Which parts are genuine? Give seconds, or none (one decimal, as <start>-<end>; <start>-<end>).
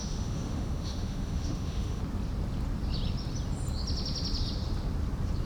2.0-5.5